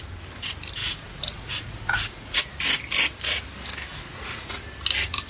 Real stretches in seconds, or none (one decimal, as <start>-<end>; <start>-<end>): 0.0-0.8; 2.4-3.9; 4.6-5.3